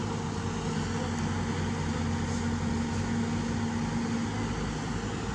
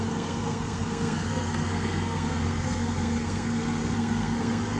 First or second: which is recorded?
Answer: first